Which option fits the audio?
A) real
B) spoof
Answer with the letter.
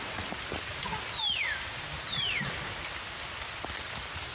A